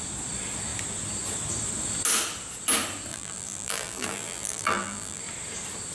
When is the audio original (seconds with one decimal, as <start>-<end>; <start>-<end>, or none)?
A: 0.0-3.1; 5.2-5.9

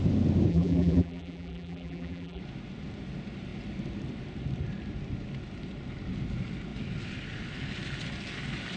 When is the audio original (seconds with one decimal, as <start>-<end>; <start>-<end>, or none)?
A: 0.0-0.5; 2.4-8.8